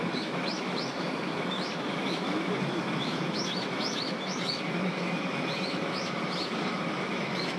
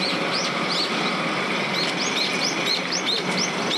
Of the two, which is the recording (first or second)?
second